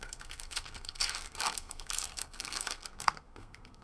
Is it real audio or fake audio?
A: fake